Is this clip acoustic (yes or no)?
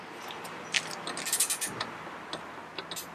yes